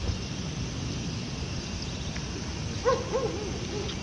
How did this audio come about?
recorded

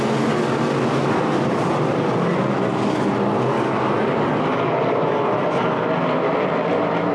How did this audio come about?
recorded